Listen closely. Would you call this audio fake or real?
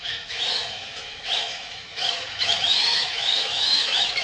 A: fake